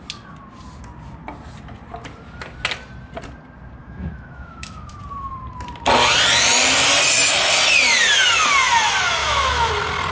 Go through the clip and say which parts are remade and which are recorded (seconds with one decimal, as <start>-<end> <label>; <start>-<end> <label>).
0.0-3.8 recorded; 3.8-5.0 remade; 5.0-9.2 recorded; 9.2-9.7 remade; 9.7-10.1 recorded